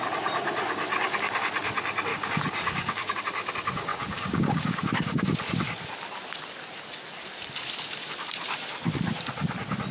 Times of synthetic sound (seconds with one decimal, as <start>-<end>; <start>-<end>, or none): 2.1-3.2; 3.9-5.1